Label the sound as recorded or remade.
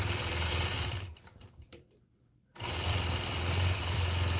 remade